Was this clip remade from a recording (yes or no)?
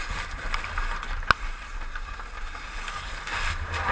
no